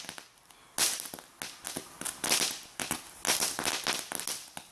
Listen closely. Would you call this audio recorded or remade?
recorded